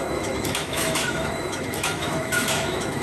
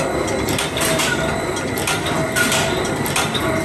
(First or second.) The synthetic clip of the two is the first